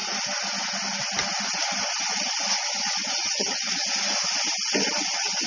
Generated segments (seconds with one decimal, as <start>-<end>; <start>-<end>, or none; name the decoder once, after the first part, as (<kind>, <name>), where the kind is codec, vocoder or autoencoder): 2.8-3.8 (vocoder, Vocos); 5.1-5.5